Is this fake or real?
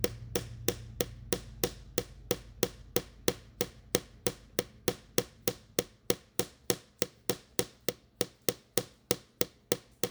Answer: real